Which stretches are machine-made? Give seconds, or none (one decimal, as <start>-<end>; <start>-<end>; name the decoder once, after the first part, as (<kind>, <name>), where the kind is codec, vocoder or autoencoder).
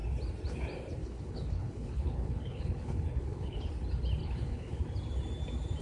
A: 1.0-3.7 (codec, HILCodec); 4.2-4.8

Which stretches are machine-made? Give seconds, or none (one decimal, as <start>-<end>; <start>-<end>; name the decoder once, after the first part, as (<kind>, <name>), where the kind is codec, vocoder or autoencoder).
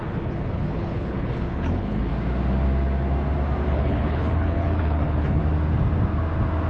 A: 0.0-2.1 (codec, HILCodec); 3.7-5.4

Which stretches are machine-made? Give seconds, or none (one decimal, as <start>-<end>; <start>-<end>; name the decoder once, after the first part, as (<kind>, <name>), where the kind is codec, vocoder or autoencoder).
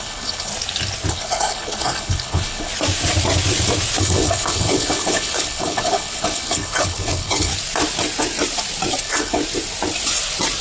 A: 0.0-0.5 (codec, HILCodec); 1.1-2.7; 4.0-7.5; 9.0-9.4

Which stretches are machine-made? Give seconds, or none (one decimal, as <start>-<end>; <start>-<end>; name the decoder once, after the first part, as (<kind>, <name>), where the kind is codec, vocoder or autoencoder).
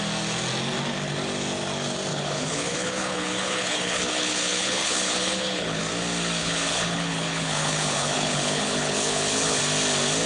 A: 2.1-5.8 (codec, HILCodec); 6.4-9.6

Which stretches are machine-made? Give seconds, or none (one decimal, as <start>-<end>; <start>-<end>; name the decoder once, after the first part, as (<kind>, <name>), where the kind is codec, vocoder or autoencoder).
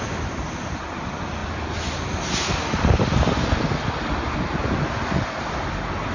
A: none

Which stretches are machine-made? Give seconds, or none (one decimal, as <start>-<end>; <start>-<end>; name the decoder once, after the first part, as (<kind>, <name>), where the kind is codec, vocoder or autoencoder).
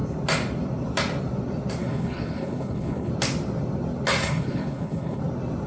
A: 1.8-3.1 (codec, HILCodec); 4.2-5.2